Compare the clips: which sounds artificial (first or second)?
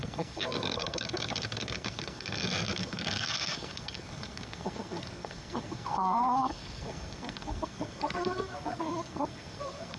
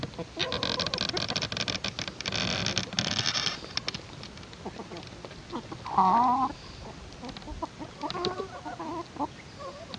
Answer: first